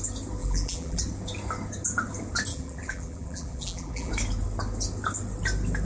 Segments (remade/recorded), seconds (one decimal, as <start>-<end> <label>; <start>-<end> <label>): 0.0-0.4 recorded; 0.4-1.0 remade; 1.0-2.5 recorded; 2.5-4.1 remade; 4.1-5.8 recorded